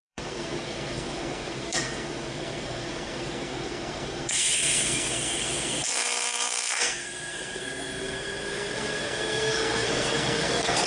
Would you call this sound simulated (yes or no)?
yes